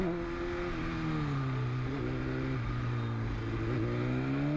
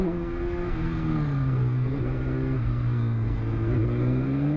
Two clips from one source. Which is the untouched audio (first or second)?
first